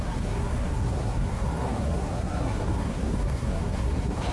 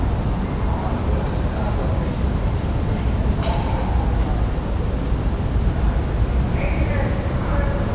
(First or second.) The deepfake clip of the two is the first